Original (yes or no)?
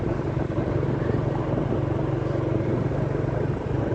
no